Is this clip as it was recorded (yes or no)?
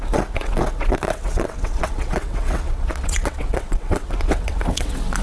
no